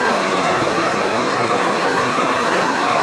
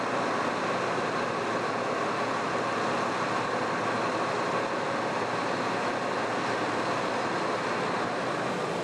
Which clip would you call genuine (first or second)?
second